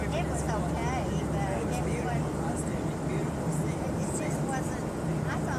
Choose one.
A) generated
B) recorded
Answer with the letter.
B